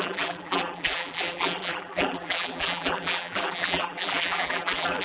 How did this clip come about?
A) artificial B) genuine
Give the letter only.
A